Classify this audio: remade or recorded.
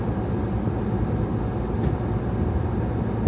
recorded